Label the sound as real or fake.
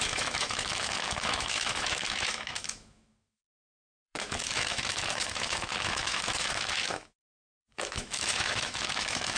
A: fake